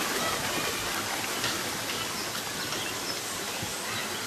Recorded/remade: recorded